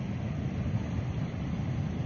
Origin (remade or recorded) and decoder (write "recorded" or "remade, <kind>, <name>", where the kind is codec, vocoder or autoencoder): recorded